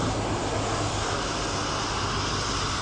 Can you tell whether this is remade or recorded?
recorded